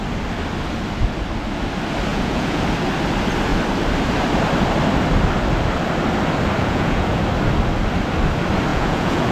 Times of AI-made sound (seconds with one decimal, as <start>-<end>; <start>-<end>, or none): 2.1-2.6; 6.6-7.2; 8.7-9.3